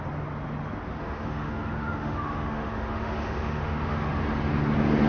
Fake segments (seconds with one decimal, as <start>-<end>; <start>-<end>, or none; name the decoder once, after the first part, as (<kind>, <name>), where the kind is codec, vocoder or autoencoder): 1.0-4.1 (autoencoder, DAC-VAE)